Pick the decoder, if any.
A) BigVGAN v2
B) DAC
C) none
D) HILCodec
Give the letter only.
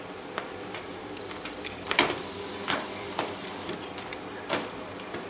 A